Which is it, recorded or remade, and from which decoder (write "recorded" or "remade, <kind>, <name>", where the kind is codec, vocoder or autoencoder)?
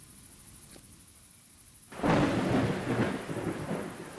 recorded